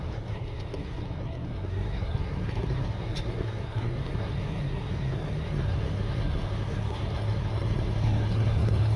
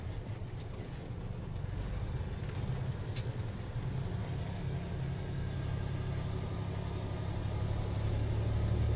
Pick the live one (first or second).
second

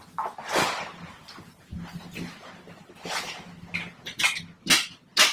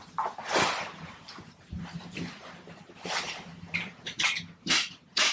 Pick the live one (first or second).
first